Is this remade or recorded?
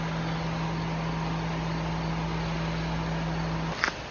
recorded